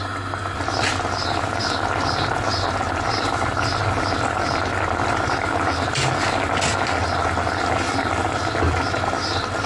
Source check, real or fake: real